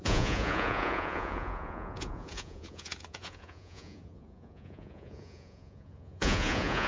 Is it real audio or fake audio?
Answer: fake